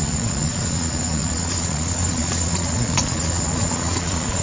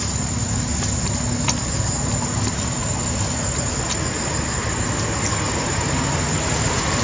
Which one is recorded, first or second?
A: second